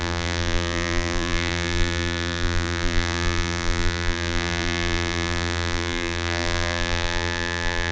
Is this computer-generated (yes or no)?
yes